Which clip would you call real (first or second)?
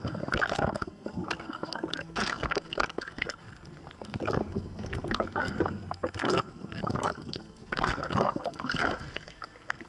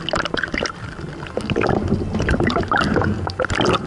second